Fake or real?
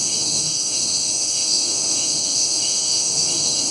fake